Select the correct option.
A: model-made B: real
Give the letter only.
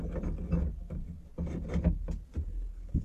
B